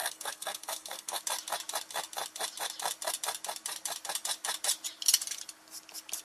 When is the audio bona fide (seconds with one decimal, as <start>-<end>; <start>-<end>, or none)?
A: 1.2-6.2